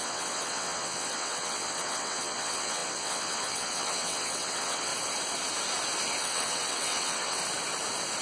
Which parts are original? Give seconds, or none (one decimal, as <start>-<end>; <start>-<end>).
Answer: 4.9-6.2; 7.4-8.2